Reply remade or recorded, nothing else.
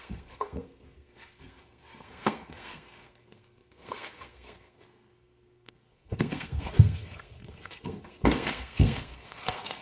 remade